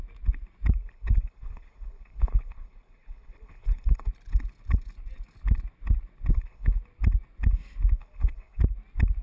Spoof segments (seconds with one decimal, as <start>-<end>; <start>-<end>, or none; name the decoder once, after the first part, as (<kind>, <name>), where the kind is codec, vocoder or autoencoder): 0.8-4.1 (codec, HILCodec); 6.3-6.8; 8.0-8.6